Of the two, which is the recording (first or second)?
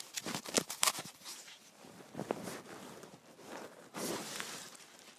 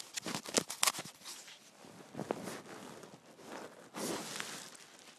second